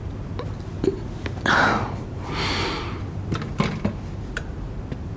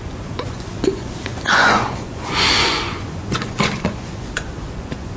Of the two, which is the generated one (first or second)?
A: second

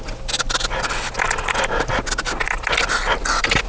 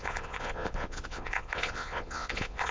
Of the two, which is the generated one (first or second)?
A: second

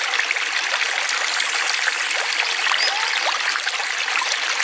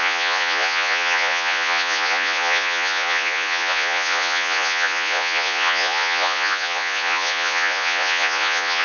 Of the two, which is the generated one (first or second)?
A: second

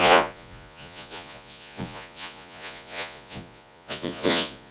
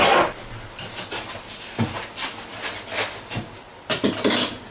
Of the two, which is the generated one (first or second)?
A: first